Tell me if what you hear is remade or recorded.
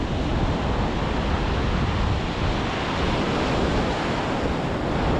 recorded